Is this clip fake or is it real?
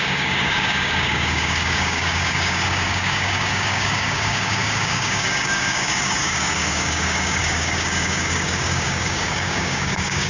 fake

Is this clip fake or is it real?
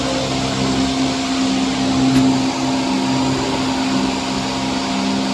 real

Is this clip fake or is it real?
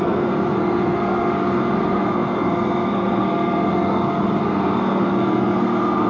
fake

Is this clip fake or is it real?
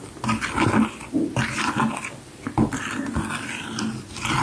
real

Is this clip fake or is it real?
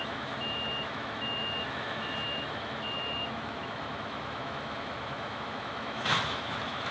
fake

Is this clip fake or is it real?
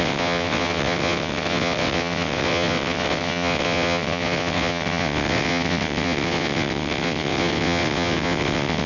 fake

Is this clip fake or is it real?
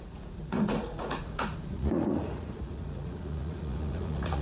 fake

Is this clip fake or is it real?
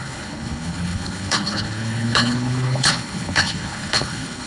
fake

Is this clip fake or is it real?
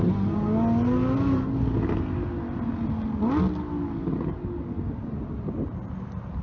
real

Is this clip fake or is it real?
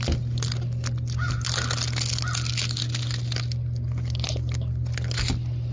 real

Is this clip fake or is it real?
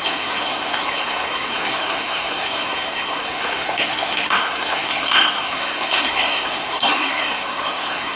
fake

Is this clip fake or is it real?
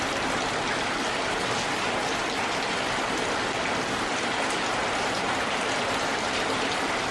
real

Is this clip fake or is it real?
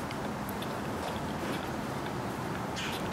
real